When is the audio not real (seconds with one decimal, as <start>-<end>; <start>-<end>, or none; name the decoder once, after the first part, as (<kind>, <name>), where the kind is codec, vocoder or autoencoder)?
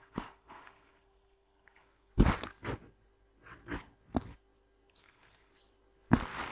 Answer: 0.0-2.1 (codec, SNAC); 4.9-5.5